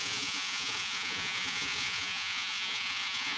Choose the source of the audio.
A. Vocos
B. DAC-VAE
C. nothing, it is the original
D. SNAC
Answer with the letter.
A